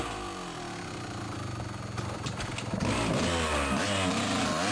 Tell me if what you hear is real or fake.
real